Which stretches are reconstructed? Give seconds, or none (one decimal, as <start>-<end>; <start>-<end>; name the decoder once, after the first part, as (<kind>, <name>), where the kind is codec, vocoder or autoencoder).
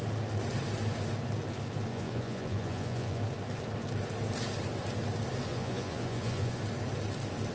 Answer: 1.9-3.2 (vocoder, Vocos); 5.5-6.6